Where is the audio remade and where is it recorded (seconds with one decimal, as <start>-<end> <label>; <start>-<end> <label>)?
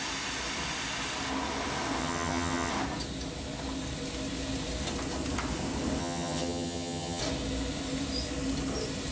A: 0.0-2.0 recorded; 2.0-2.7 remade; 2.7-6.0 recorded; 6.0-7.2 remade; 7.2-9.1 recorded